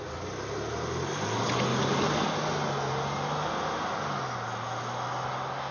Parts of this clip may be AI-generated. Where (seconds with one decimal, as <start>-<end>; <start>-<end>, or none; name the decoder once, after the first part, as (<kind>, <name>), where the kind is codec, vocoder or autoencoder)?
none